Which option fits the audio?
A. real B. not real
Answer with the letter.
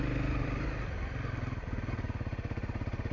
A